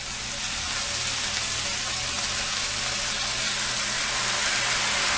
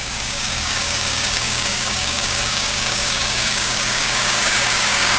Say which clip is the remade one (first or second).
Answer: second